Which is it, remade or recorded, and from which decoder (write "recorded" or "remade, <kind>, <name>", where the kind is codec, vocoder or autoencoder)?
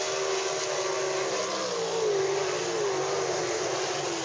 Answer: recorded